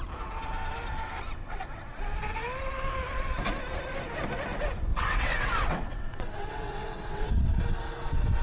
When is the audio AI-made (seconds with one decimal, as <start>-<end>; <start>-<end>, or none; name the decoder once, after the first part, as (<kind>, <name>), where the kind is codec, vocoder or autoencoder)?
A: 1.4-2.0 (vocoder, WaveNeXt); 4.9-7.6

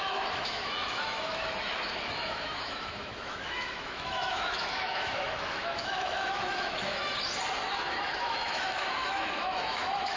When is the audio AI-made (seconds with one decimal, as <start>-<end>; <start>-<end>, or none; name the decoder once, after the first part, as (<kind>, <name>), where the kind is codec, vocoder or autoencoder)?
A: 0.0-7.1 (autoencoder, DAC-VAE); 7.7-10.2

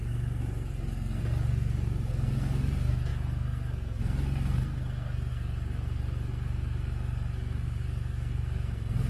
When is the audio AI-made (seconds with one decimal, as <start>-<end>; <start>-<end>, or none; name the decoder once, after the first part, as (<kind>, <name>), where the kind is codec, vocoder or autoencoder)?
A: 0.0-9.1 (codec, SNAC)